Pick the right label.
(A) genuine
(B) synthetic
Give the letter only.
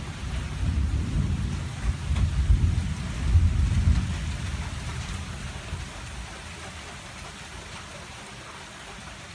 A